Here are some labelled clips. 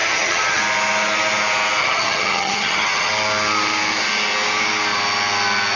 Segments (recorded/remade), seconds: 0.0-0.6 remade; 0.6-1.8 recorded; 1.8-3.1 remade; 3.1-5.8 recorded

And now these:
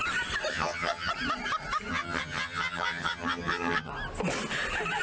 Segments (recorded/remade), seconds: 0.0-0.5 recorded; 0.5-1.1 remade; 1.1-1.9 recorded; 1.9-3.9 remade; 3.9-5.0 recorded

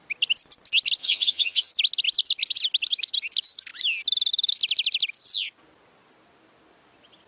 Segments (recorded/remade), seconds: 0.0-1.0 recorded; 1.0-1.7 remade; 1.7-7.3 recorded

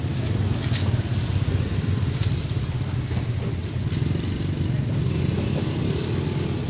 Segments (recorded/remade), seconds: 0.0-6.7 recorded

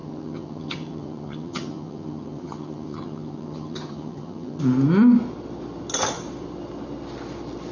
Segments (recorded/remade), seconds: 0.0-4.6 remade; 4.6-7.7 recorded